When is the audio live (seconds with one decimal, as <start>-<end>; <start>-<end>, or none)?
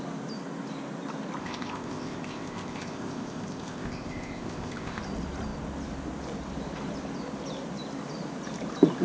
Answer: 0.0-1.4; 5.0-9.0